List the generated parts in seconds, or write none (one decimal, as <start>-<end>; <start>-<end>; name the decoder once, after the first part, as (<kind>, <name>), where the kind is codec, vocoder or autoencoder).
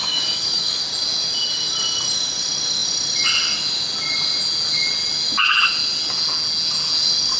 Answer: 0.0-0.8 (codec, DAC)